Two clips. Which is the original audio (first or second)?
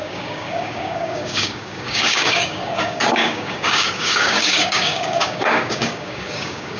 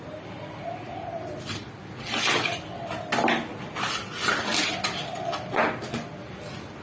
second